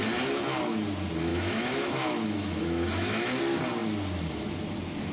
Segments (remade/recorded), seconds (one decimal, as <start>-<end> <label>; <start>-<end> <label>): 0.0-1.3 recorded; 1.3-3.4 remade; 3.4-5.1 recorded